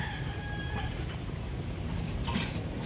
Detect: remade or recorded recorded